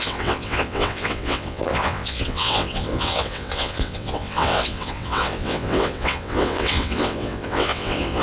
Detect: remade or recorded remade